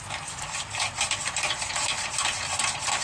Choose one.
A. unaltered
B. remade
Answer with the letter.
A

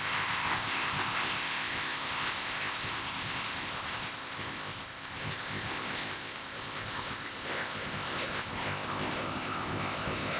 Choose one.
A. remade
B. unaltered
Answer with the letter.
A